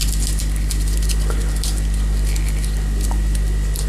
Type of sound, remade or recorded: recorded